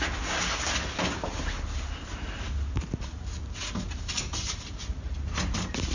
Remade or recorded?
recorded